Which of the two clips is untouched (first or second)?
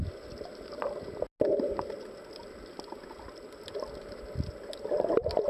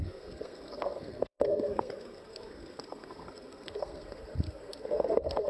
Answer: first